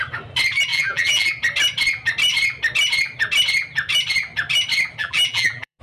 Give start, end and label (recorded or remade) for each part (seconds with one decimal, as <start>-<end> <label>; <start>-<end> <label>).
0.0-0.7 recorded; 0.7-1.3 remade; 1.3-5.0 recorded; 5.0-5.8 remade